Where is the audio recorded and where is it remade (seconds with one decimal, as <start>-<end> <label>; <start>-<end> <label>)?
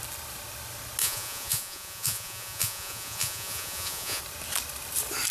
0.0-1.0 recorded; 1.0-4.2 remade; 4.2-5.3 recorded